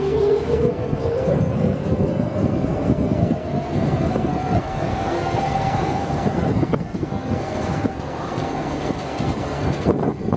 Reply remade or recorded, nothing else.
remade